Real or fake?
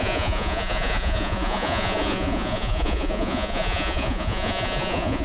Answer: fake